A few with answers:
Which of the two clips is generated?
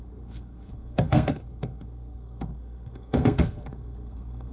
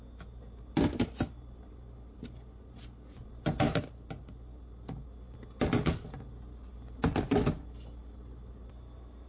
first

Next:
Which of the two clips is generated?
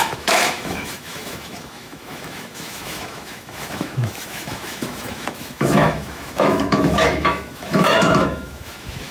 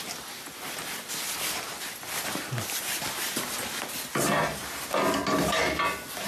first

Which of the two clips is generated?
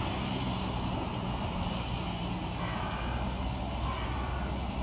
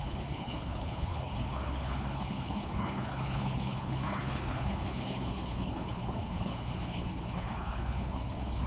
second